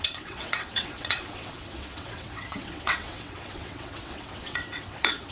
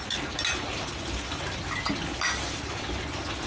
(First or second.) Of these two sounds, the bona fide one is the second